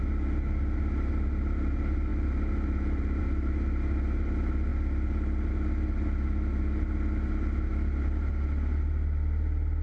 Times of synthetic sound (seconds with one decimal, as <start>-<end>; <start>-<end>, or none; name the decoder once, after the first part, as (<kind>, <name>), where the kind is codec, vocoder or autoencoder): 4.7-5.5 (vocoder, BigVGAN v2)